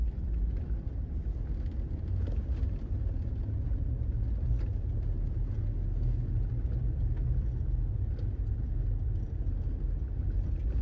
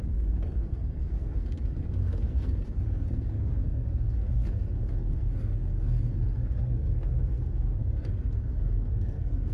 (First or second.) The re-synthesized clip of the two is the second